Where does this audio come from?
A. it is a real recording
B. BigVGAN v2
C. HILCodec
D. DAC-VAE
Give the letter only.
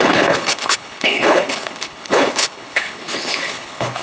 C